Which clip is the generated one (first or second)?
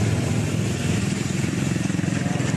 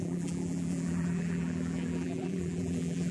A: second